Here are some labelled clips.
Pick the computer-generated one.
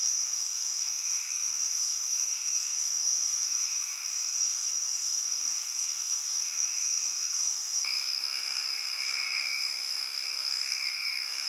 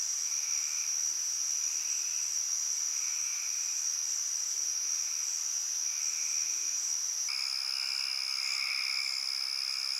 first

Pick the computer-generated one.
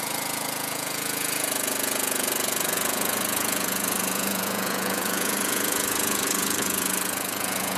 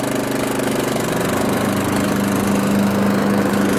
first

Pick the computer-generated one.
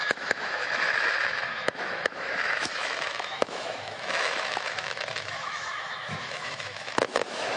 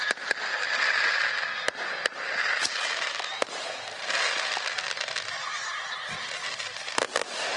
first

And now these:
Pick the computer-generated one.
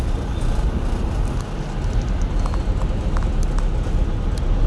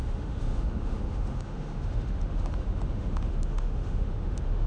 second